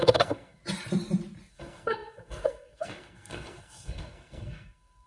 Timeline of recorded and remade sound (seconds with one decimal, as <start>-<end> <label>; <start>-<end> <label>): 0.0-0.6 remade; 0.6-1.5 recorded; 1.5-5.1 remade